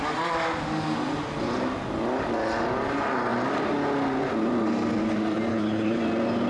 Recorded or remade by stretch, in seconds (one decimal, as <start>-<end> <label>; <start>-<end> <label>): 0.0-5.5 recorded; 5.5-6.0 remade; 6.0-6.5 recorded